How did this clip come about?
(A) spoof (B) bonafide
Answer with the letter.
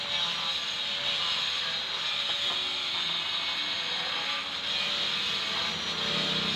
B